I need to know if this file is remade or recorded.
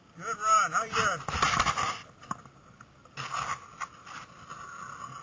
recorded